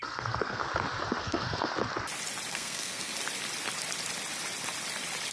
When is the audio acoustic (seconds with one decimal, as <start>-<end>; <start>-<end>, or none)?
0.6-1.2; 1.7-2.5; 3.1-5.3